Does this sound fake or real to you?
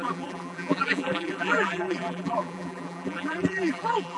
fake